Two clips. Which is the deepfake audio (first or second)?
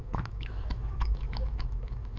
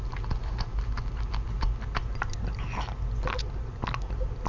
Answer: first